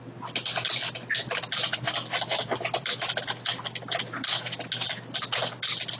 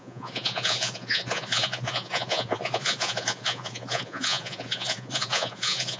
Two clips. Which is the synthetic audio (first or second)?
second